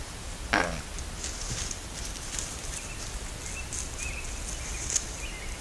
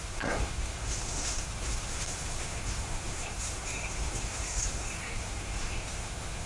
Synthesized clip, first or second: second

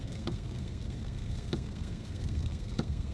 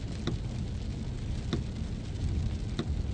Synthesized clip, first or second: first